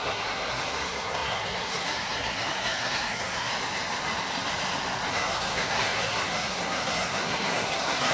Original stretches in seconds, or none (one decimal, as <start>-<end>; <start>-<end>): 3.5-5.1